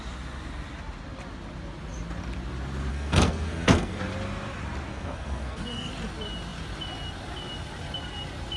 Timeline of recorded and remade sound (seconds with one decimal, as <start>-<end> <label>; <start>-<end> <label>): 0.0-2.9 recorded; 2.9-4.0 remade; 4.0-4.9 recorded; 4.9-5.9 remade; 5.9-8.6 recorded